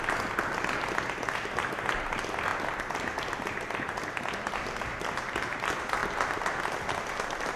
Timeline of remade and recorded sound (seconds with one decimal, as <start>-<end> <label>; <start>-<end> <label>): 0.0-7.6 recorded